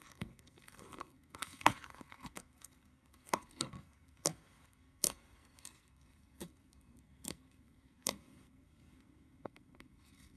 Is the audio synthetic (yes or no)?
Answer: yes